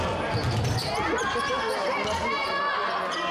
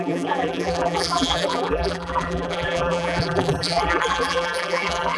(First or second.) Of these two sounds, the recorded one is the first